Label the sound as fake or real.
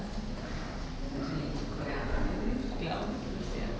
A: real